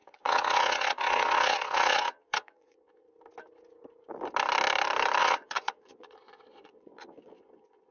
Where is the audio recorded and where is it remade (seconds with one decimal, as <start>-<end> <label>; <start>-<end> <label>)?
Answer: 0.0-3.0 remade; 3.0-5.2 recorded; 5.2-7.9 remade